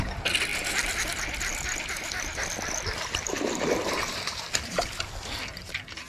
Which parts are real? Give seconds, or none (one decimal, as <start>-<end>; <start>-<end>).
0.0-6.1